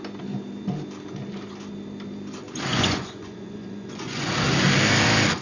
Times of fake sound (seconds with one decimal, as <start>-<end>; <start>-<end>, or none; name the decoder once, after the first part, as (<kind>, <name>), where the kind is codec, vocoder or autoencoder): 2.7-4.3 (vocoder, Vocos)